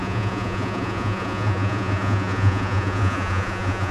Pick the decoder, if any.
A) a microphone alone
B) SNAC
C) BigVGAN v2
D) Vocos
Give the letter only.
D